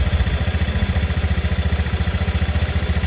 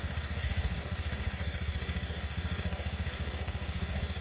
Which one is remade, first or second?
second